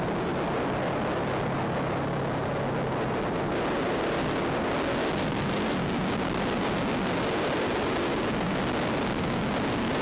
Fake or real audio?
real